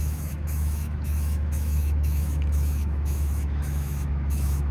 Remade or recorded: remade